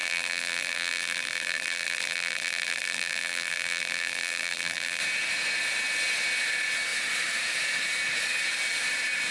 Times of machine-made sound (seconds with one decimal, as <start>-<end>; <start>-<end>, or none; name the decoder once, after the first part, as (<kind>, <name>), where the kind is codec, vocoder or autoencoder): 0.0-5.0 (vocoder, BigVGAN v2)

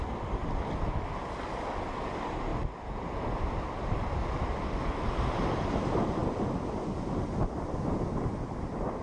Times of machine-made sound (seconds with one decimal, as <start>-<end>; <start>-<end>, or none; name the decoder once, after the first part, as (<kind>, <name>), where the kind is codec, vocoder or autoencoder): none

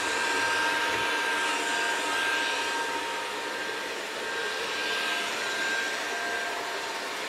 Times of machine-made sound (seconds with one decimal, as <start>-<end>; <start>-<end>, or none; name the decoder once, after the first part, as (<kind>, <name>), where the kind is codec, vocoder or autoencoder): none

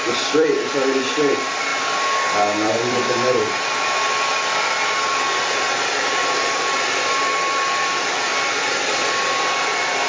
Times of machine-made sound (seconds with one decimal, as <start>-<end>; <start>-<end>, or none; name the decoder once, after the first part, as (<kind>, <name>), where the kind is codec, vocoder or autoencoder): 0.0-8.3 (vocoder, BigVGAN v2); 8.9-10.1

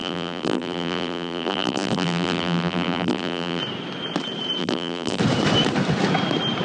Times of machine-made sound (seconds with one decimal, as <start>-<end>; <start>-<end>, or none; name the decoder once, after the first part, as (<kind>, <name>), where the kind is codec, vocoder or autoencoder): 0.0-3.6 (vocoder, BigVGAN v2); 4.6-5.2

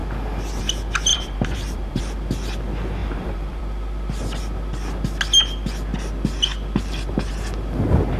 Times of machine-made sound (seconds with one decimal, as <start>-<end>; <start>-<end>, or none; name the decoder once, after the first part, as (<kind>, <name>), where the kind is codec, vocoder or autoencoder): 1.1-2.0 (vocoder, BigVGAN v2); 3.0-3.6